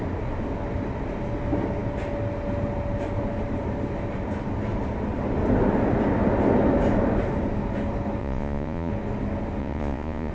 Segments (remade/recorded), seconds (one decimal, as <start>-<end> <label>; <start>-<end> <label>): 0.0-8.2 recorded; 8.2-8.9 remade; 8.9-9.6 recorded; 9.6-10.3 remade